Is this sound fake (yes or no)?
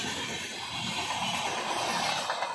no